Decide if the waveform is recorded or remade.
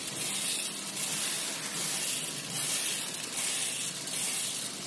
recorded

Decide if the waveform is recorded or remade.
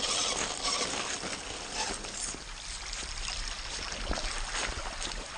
recorded